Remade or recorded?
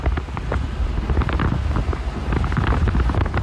recorded